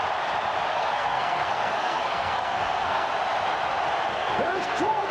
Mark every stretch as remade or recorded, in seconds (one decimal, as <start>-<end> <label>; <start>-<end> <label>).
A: 0.0-0.7 recorded; 0.7-3.1 remade; 3.1-4.1 recorded; 4.1-5.1 remade